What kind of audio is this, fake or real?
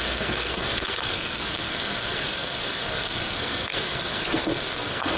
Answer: fake